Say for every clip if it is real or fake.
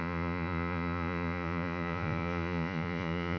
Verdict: fake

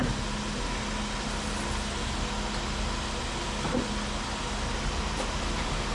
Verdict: real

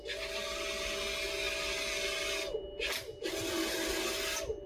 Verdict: real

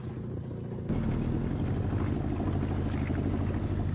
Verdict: real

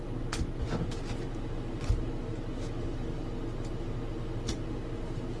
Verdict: real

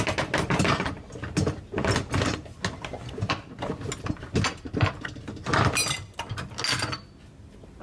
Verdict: real